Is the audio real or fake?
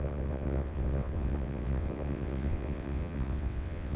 fake